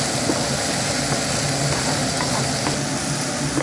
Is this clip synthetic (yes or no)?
no